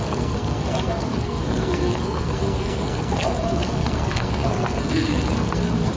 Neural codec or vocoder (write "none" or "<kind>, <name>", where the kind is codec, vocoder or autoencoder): codec, SNAC